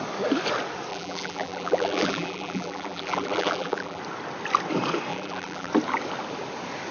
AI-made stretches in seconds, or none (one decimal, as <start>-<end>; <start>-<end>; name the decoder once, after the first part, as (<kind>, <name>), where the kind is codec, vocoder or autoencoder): 0.9-4.0 (vocoder, BigVGAN v2); 5.1-5.7